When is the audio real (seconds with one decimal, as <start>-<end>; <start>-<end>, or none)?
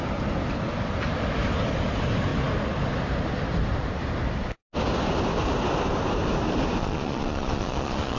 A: 0.0-6.8